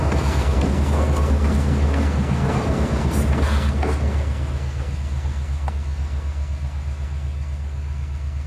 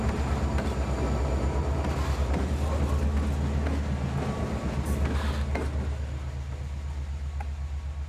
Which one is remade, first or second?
first